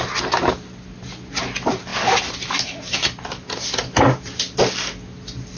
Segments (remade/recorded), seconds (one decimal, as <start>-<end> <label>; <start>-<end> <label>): 0.0-5.6 recorded